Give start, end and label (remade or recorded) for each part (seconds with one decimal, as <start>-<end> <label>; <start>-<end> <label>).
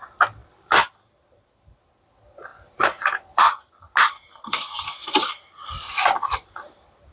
0.0-0.4 recorded; 0.4-1.0 remade; 1.0-2.5 recorded; 2.5-3.7 remade; 3.7-5.0 recorded; 5.0-6.5 remade; 6.5-7.1 recorded